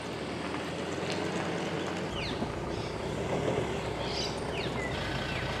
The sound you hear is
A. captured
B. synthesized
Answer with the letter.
A